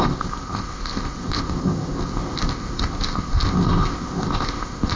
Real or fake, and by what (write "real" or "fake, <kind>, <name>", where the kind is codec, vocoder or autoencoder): fake, codec, ZipCodec